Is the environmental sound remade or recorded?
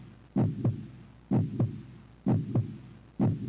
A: recorded